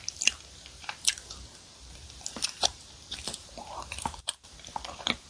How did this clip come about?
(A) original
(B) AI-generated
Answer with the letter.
B